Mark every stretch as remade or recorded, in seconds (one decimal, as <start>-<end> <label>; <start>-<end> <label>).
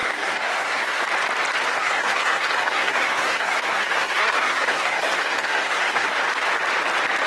0.0-1.0 remade; 1.0-1.7 recorded; 1.7-6.1 remade; 6.1-7.3 recorded